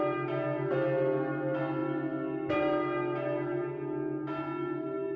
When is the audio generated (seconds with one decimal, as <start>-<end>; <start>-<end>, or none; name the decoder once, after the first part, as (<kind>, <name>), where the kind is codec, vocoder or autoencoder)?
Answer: none